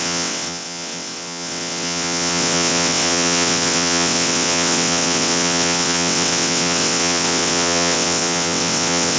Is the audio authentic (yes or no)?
no